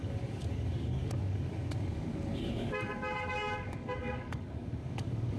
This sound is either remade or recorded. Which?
remade